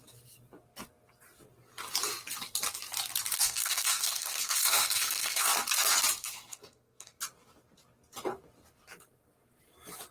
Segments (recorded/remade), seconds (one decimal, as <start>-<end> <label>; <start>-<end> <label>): 0.0-3.3 recorded; 3.3-5.5 remade; 5.5-6.2 recorded; 6.2-7.2 remade; 7.2-10.1 recorded